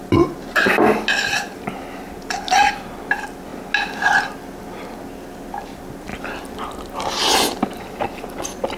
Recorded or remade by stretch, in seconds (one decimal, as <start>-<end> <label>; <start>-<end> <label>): 0.0-6.1 recorded; 6.1-6.7 remade; 6.7-8.8 recorded